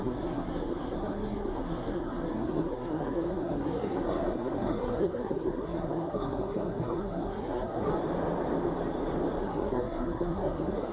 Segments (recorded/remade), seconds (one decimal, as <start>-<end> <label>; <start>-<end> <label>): 0.0-7.9 remade; 7.9-9.4 recorded; 9.4-10.9 remade

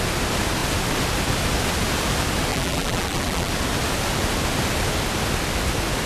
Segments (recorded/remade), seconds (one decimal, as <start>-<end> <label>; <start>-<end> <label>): 0.0-2.5 recorded; 2.5-3.5 remade; 3.5-6.1 recorded

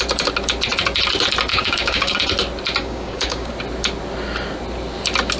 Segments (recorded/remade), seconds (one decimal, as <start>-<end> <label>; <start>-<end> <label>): 0.0-1.5 recorded; 1.5-2.2 remade; 2.2-2.8 recorded; 2.8-3.5 remade; 3.5-5.4 recorded

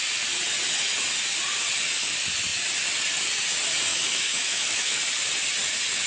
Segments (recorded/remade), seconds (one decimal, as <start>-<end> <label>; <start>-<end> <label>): 0.0-3.9 recorded; 3.9-5.0 remade; 5.0-6.1 recorded

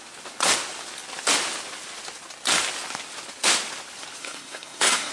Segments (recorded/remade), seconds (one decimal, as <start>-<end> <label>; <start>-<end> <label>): 0.0-4.2 recorded; 4.2-5.1 remade